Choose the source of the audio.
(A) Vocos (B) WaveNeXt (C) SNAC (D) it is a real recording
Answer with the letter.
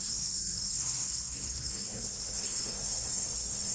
C